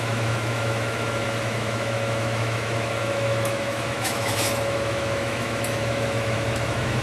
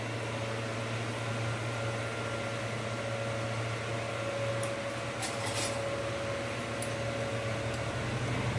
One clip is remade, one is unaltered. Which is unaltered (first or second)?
second